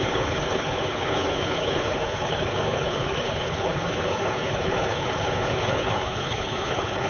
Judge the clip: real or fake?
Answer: fake